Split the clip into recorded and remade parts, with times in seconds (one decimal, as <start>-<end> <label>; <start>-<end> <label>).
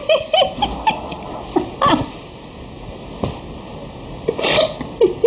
0.0-5.3 recorded